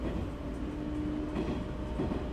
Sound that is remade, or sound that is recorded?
recorded